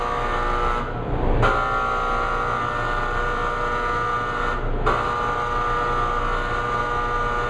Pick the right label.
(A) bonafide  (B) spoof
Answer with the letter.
A